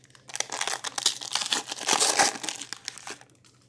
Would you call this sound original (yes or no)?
yes